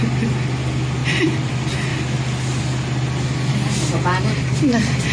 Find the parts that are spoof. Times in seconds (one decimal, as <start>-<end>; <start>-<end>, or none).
1.0-1.5